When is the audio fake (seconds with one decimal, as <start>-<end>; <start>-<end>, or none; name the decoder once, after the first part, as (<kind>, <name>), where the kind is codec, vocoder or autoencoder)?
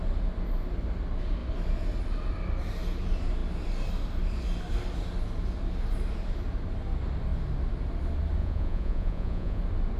8.4-9.6 (vocoder, Vocos)